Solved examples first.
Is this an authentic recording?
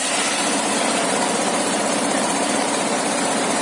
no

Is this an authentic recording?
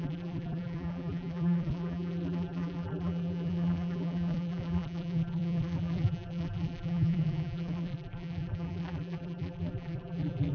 no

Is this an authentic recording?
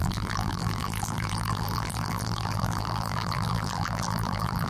no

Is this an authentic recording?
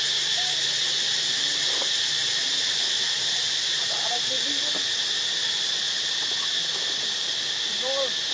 yes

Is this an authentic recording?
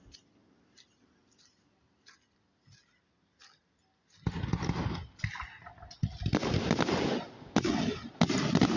yes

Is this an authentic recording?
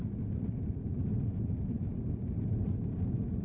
yes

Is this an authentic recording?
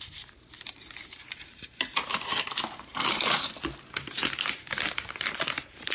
no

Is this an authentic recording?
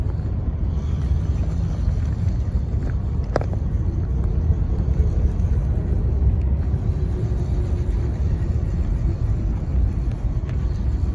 yes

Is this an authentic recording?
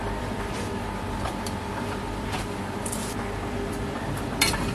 no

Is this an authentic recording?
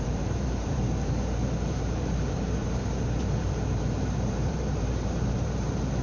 no